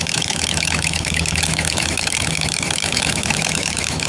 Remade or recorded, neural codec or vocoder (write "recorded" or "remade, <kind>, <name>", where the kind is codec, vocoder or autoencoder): remade, autoencoder, DAC-VAE